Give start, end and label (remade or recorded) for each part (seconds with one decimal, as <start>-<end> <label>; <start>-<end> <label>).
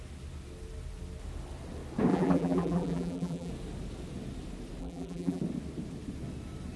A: 0.0-2.1 recorded; 2.1-3.5 remade; 3.5-4.8 recorded; 4.8-5.4 remade; 5.4-6.8 recorded